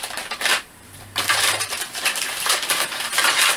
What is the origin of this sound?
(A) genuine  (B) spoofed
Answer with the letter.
B